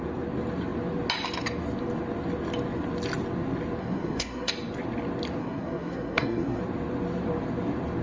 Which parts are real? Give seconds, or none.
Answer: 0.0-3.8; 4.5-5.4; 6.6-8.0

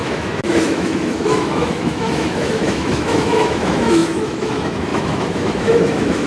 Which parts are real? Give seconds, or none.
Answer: none

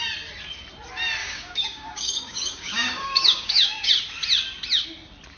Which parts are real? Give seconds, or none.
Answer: 0.0-1.2; 3.9-5.4

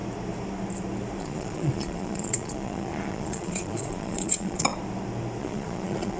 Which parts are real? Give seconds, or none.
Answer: 0.0-1.2; 4.7-5.4

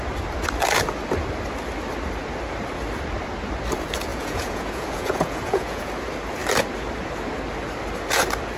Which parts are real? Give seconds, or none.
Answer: 0.0-4.1; 5.9-8.6